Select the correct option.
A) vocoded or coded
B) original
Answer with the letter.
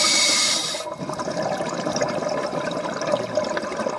B